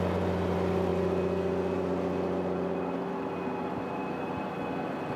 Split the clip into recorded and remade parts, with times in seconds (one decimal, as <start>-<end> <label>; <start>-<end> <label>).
0.0-5.2 recorded